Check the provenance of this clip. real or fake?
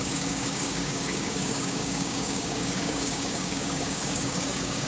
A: fake